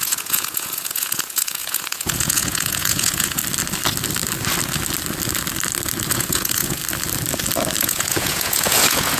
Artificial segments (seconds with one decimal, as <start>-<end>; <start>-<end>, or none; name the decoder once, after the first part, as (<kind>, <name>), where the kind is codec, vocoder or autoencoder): 0.0-3.4 (vocoder, Vocos); 6.1-6.8; 7.8-9.2

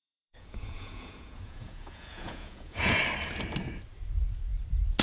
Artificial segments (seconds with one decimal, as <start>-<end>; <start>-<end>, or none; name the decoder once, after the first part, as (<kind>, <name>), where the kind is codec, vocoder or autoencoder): 0.0-3.0 (vocoder, Vocos)